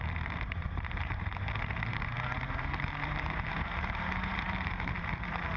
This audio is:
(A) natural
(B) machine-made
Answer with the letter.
B